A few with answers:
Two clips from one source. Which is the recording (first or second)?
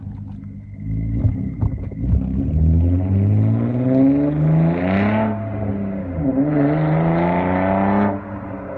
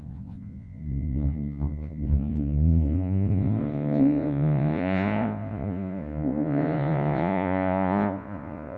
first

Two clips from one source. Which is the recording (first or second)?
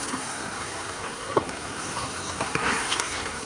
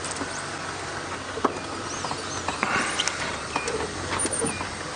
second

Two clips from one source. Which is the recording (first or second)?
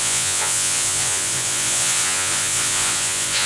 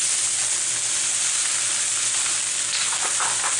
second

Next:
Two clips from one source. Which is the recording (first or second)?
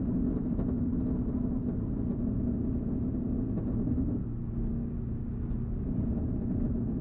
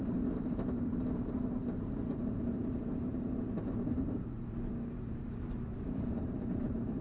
first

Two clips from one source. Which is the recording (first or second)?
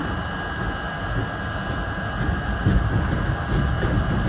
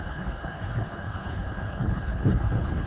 first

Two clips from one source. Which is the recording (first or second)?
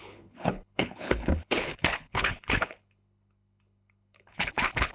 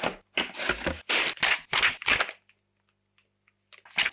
second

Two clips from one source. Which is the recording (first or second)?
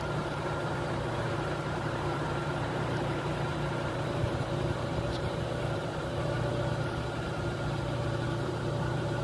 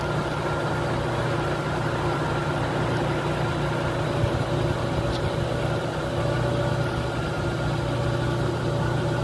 second